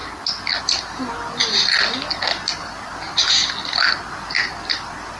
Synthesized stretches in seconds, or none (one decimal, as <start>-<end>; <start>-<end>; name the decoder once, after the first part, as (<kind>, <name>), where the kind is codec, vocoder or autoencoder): none